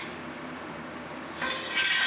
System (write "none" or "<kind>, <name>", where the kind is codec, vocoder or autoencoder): vocoder, BigVGAN v2